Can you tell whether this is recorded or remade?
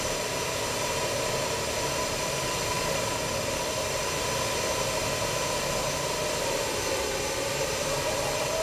recorded